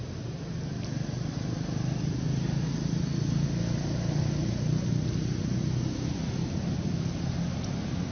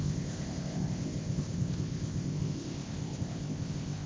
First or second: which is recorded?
first